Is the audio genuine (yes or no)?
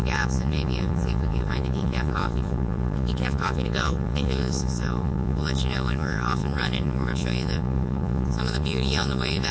no